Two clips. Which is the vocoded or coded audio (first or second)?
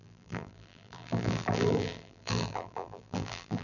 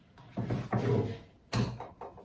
first